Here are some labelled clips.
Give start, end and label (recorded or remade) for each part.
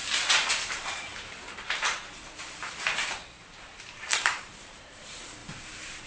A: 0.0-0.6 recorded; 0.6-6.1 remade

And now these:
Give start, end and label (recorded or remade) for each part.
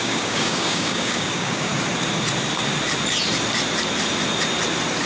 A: 0.0-1.7 remade; 1.7-5.1 recorded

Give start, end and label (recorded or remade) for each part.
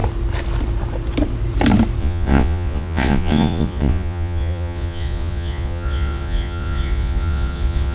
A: 0.0-2.0 recorded; 2.0-7.9 remade